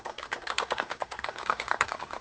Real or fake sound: fake